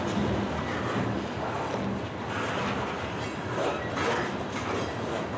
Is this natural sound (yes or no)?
yes